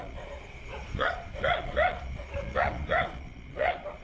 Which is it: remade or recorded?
remade